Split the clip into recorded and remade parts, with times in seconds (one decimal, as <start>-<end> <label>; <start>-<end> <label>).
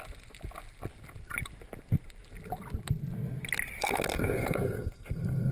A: 0.0-3.8 recorded; 3.8-5.5 remade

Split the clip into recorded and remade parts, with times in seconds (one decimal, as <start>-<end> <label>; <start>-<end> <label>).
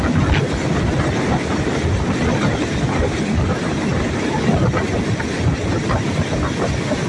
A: 0.0-7.1 recorded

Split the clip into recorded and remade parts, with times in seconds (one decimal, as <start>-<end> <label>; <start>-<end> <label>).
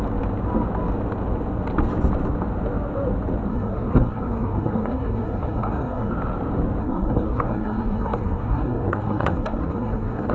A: 0.0-3.5 recorded; 3.5-6.1 remade; 6.1-6.8 recorded; 6.8-10.3 remade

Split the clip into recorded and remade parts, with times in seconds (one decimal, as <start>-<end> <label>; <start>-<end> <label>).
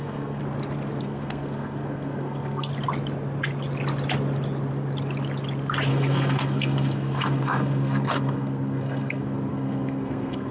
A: 0.0-0.4 remade; 0.4-1.0 recorded; 1.0-2.7 remade; 2.7-5.9 recorded; 5.9-10.5 remade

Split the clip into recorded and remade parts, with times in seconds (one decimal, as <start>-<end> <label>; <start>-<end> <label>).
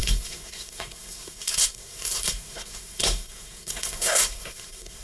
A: 0.0-5.0 remade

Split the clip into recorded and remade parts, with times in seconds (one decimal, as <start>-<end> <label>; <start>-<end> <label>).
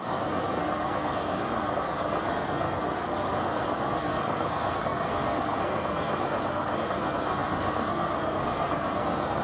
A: 0.0-9.4 remade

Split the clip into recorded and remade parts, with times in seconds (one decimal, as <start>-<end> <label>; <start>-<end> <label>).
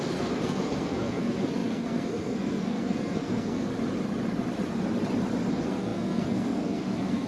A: 0.0-3.7 remade; 3.7-5.5 recorded; 5.5-7.3 remade